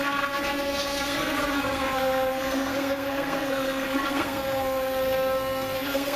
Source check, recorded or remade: remade